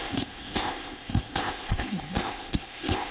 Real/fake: fake